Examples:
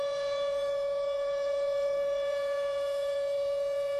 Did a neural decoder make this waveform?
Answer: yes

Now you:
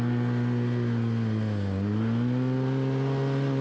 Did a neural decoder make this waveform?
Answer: no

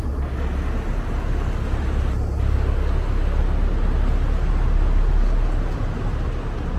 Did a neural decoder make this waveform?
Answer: no